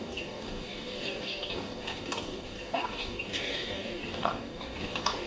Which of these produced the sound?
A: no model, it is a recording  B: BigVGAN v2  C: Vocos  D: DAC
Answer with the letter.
D